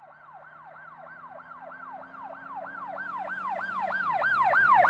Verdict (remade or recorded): recorded